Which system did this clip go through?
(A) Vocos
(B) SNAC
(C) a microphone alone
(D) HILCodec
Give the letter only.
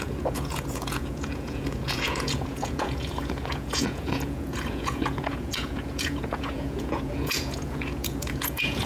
A